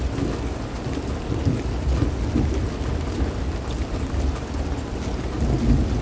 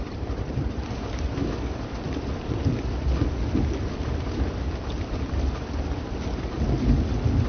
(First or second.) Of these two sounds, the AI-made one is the second